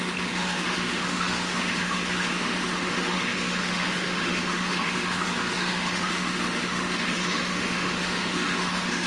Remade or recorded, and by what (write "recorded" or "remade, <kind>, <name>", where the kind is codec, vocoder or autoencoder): remade, autoencoder, DAC-VAE